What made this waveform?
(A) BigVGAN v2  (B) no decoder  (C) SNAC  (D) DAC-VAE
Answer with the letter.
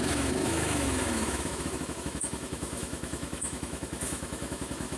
D